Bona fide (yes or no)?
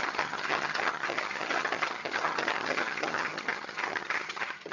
no